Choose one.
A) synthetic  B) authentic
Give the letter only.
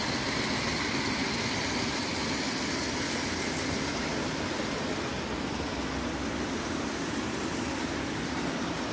B